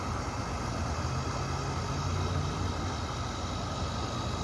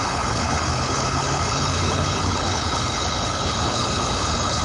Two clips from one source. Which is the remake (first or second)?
second